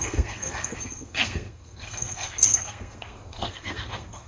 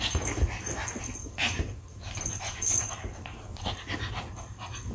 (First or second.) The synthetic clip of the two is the first